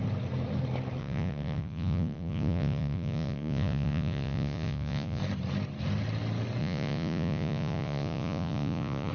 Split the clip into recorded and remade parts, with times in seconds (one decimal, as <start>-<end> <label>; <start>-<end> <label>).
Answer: 0.0-1.0 recorded; 1.0-5.2 remade; 5.2-6.6 recorded; 6.6-9.1 remade